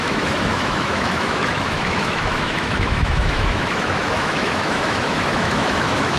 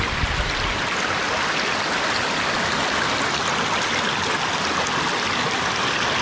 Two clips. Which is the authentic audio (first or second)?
second